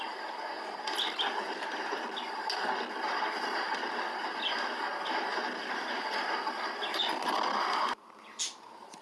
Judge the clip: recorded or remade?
recorded